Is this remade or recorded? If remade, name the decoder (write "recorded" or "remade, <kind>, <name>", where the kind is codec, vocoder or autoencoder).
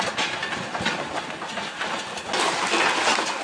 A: recorded